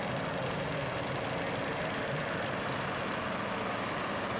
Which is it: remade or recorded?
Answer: recorded